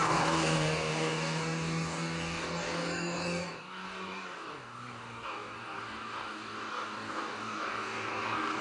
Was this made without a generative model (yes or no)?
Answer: no